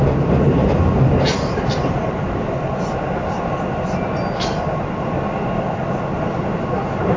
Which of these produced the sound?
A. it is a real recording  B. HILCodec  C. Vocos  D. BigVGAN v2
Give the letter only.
A